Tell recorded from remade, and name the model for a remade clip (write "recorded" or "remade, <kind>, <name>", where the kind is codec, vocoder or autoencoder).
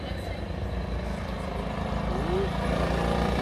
recorded